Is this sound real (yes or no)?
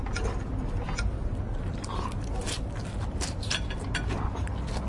yes